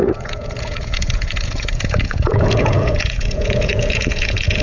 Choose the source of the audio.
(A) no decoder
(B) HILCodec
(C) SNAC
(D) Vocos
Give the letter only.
D